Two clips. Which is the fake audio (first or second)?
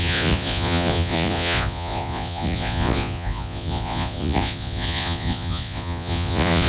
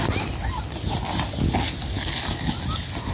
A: first